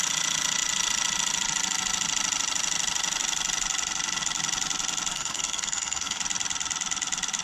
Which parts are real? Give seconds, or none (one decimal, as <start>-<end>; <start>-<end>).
0.0-5.1; 6.2-7.4